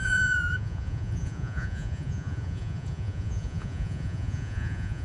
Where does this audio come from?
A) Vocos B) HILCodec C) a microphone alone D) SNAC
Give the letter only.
A